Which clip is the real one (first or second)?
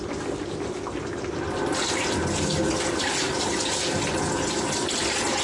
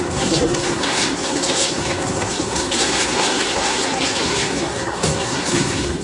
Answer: first